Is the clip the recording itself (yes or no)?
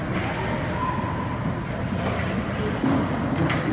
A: yes